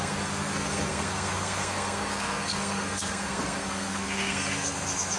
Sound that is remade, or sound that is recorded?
remade